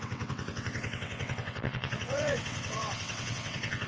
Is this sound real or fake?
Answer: fake